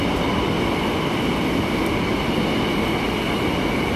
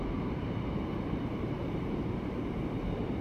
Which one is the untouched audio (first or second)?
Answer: first